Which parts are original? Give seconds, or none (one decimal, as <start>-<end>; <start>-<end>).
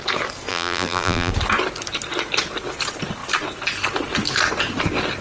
0.0-0.5; 1.3-5.2